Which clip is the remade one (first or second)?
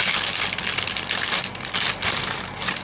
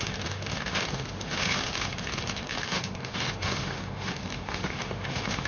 second